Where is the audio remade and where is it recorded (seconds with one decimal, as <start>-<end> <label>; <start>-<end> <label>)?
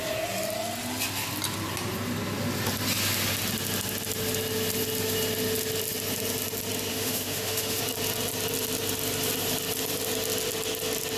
0.0-6.9 recorded; 6.9-7.8 remade; 7.8-11.2 recorded